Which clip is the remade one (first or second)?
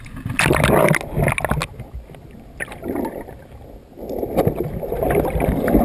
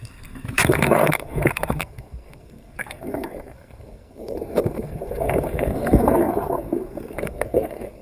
second